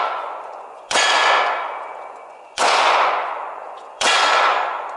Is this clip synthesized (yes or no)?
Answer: yes